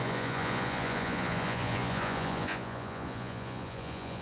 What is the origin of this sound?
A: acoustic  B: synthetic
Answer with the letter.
B